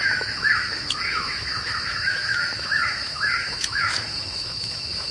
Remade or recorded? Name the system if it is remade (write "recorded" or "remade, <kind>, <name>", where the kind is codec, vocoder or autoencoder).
remade, autoencoder, DAC-VAE